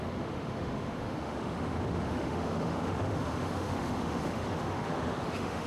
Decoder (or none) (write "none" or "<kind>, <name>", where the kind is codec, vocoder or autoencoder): autoencoder, DAC-VAE